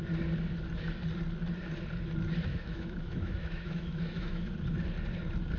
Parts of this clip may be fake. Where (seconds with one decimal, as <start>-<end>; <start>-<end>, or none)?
2.5-4.5